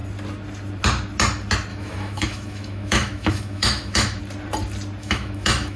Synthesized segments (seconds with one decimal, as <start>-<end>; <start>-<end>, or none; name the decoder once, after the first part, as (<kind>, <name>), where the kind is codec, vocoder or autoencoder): 1.7-4.2 (autoencoder, DAC-VAE); 5.0-5.8